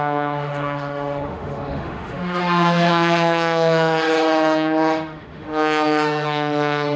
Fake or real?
fake